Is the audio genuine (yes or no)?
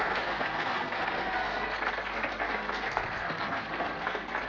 no